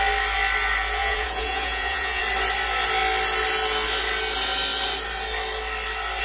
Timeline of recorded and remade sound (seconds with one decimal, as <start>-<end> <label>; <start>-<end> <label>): 0.0-1.0 recorded; 1.0-2.2 remade; 2.2-6.2 recorded